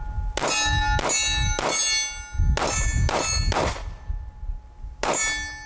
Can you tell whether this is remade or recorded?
recorded